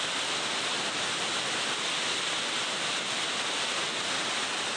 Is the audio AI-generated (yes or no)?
no